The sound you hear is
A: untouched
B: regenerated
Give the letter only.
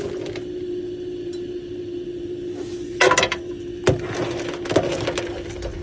A